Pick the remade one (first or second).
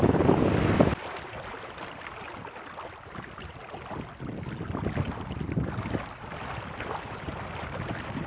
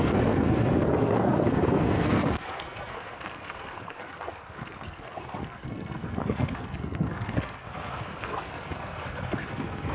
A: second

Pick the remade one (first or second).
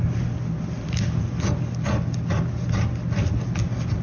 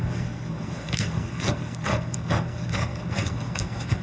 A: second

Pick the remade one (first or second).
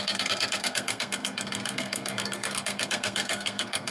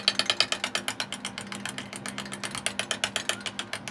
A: first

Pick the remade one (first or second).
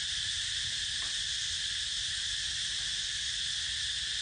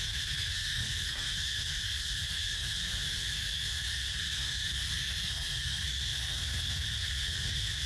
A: second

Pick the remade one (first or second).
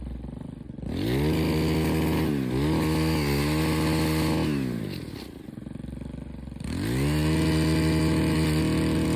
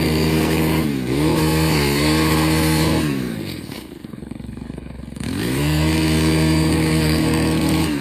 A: second